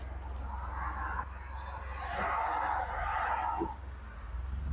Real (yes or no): yes